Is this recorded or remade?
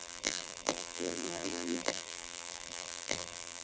remade